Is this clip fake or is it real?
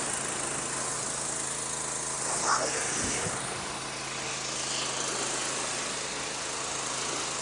real